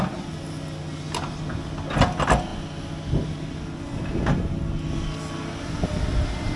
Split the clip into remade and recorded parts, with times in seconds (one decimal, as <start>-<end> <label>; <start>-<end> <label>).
0.0-6.6 recorded